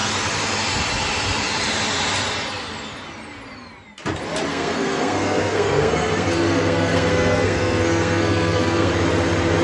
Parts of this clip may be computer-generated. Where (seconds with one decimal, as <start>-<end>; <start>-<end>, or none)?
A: 4.5-8.9